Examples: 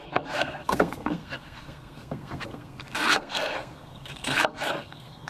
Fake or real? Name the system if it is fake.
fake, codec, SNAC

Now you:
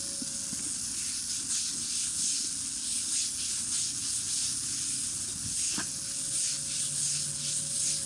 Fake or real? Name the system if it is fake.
real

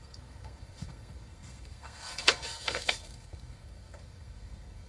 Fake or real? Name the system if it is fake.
fake, codec, SNAC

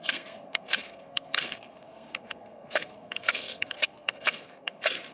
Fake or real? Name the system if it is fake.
fake, codec, SNAC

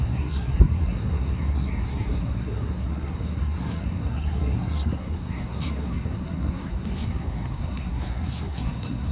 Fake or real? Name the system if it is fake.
fake, codec, SNAC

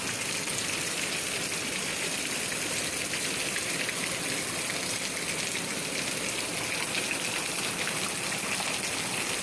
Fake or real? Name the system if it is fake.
real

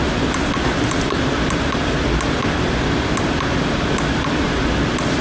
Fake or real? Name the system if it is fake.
real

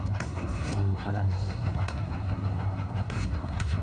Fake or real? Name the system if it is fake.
fake, codec, SNAC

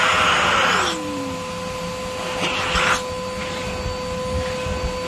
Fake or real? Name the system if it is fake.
real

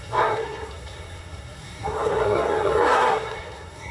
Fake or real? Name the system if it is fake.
fake, codec, SNAC